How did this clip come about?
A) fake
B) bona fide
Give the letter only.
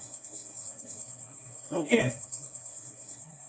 A